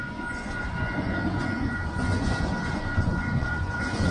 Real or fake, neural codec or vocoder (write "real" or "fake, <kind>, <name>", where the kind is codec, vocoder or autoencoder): fake, vocoder, Vocos